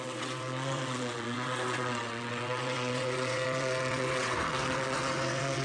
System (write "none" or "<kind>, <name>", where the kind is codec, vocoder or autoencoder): vocoder, WaveNeXt